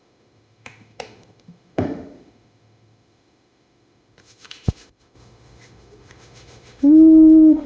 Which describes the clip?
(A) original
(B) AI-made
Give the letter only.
B